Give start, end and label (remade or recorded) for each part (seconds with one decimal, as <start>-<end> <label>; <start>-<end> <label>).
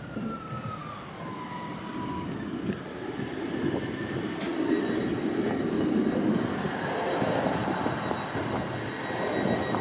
0.0-9.8 recorded